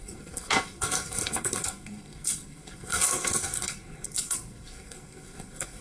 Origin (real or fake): fake